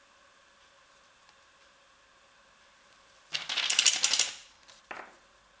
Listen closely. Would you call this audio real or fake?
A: real